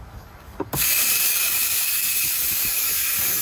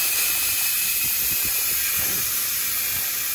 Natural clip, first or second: second